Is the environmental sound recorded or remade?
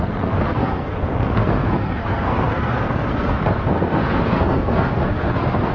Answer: remade